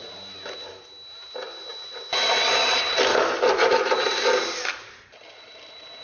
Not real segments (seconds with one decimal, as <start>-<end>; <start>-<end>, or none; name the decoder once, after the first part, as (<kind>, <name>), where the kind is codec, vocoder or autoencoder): none